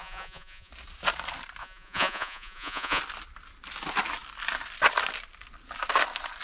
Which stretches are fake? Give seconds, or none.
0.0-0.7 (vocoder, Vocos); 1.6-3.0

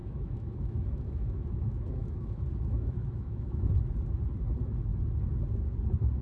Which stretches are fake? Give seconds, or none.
0.0-3.7 (autoencoder, DAC-VAE)

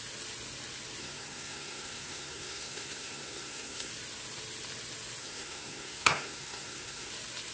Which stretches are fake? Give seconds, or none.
1.0-3.9 (codec, SNAC); 5.2-7.1